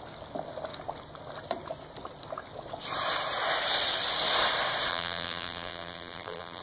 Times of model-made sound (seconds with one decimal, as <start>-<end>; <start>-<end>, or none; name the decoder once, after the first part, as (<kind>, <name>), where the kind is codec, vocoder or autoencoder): 4.9-6.6 (vocoder, BigVGAN v2)